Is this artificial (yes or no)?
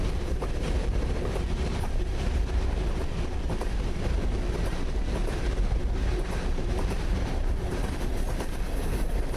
yes